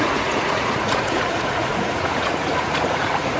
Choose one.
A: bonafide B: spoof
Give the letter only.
B